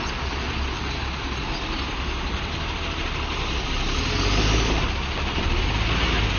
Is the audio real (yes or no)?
yes